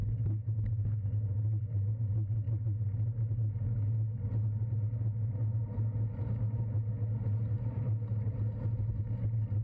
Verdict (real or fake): real